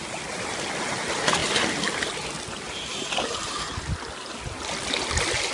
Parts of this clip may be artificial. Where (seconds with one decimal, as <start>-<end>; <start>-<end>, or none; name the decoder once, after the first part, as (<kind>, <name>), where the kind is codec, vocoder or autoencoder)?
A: none